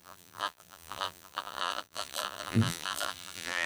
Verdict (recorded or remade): remade